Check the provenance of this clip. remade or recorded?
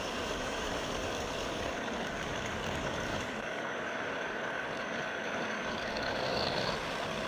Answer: remade